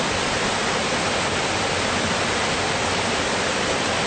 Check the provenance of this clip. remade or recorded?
recorded